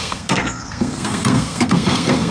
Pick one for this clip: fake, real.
fake